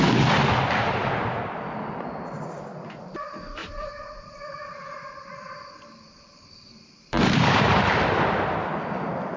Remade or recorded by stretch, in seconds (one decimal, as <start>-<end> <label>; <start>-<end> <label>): 0.0-3.6 recorded; 3.6-7.9 remade; 7.9-9.4 recorded